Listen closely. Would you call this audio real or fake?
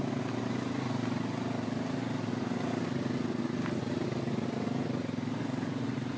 real